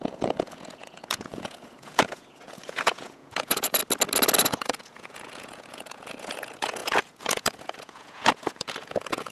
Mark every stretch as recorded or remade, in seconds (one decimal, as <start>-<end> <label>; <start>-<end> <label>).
0.0-3.8 remade; 3.8-4.4 recorded; 4.4-9.3 remade